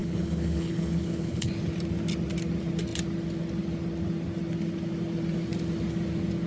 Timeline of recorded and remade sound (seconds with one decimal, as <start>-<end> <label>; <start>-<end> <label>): 0.0-1.5 remade; 1.5-6.5 recorded